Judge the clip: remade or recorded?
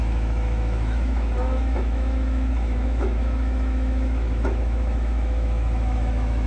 remade